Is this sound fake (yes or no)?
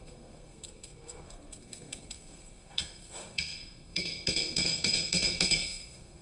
yes